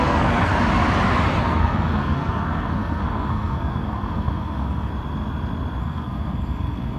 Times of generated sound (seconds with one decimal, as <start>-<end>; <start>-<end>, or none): 0.0-0.5; 1.4-4.9; 5.8-7.0